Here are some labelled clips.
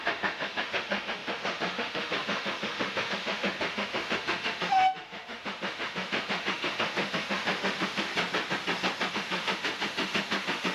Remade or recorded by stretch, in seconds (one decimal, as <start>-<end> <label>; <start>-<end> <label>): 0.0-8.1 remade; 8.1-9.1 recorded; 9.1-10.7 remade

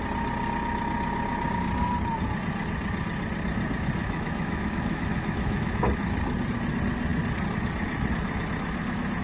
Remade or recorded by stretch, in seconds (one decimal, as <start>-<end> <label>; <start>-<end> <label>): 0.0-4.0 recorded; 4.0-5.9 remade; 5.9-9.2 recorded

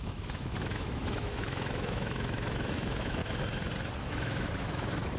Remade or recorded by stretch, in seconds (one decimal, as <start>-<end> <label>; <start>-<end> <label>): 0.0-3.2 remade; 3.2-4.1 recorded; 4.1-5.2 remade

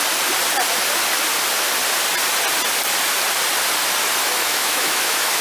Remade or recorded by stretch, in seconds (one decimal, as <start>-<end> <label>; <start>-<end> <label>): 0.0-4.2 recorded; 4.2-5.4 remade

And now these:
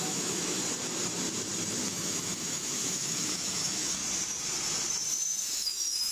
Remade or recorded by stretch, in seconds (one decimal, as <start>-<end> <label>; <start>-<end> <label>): 0.0-0.6 remade; 0.6-1.8 recorded; 1.8-4.0 remade; 4.0-5.2 recorded; 5.2-6.1 remade

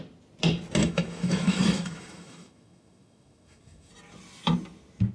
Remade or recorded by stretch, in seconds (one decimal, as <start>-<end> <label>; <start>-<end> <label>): 0.0-0.8 recorded; 0.8-3.9 remade; 3.9-5.1 recorded

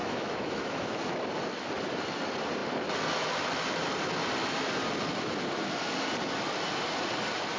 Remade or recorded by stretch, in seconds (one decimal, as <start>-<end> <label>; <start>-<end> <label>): 0.0-1.0 remade; 1.0-7.6 recorded